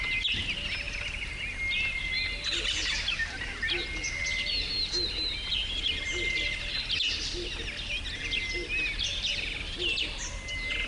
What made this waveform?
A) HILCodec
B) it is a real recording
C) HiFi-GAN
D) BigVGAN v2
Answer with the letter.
B